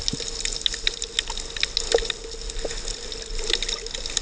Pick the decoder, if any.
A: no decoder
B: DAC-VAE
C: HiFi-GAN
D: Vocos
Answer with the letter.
A